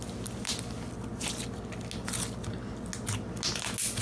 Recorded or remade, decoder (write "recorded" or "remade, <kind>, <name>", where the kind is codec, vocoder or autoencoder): recorded